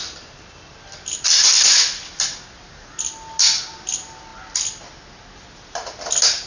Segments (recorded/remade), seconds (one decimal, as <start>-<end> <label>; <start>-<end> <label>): 0.0-6.5 recorded